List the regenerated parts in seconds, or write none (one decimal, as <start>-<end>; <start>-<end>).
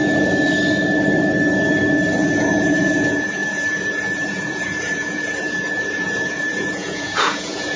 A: 2.4-7.8